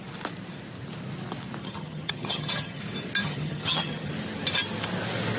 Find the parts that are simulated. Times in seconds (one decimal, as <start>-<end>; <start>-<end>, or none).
1.6-2.8; 3.2-4.1